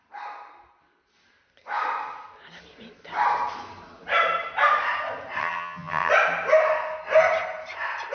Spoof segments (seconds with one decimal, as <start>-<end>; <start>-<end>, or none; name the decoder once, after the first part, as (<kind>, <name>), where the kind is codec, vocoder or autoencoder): 5.4-6.1 (vocoder, HiFi-GAN)